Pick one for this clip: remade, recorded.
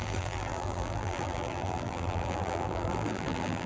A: remade